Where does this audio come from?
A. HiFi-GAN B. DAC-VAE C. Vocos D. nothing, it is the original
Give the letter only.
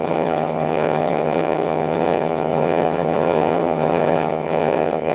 A